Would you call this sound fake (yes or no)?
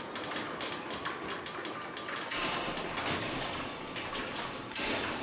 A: no